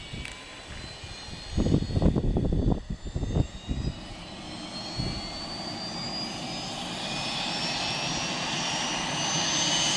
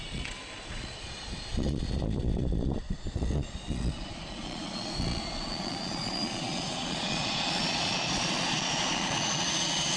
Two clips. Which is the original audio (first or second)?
first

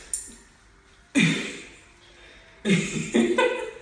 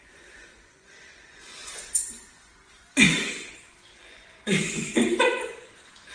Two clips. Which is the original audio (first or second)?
first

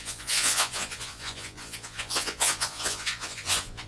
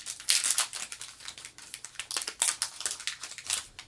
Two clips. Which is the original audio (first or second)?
second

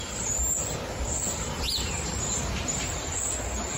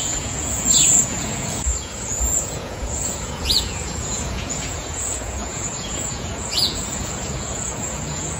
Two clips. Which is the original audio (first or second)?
first